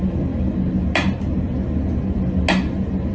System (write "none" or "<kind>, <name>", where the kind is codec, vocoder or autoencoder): none